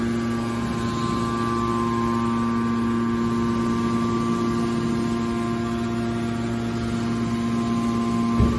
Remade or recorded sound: recorded